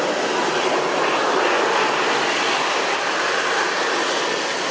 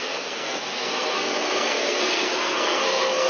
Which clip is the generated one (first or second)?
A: second